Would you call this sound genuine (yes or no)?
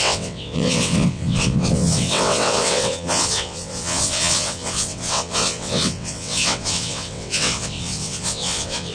no